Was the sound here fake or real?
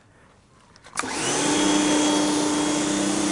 real